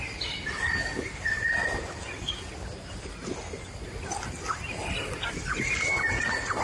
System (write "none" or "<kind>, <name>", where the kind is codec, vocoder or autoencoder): none